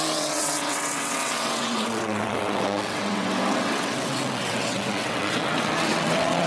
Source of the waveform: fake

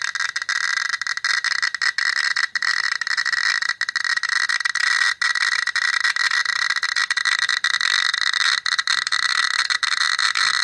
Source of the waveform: real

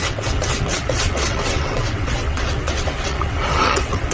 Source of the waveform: fake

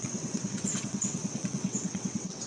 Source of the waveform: fake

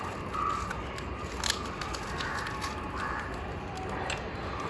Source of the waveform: real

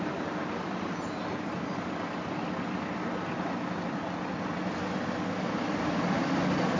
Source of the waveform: real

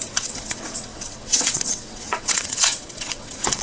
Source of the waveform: fake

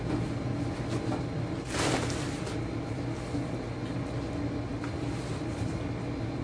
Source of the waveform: real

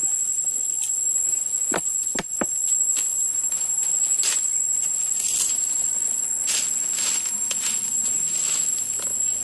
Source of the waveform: real